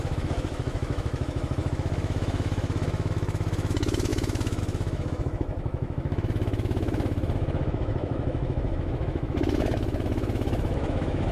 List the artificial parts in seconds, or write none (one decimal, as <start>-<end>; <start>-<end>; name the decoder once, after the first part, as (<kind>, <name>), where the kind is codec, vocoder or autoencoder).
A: 0.0-11.3 (autoencoder, DAC-VAE)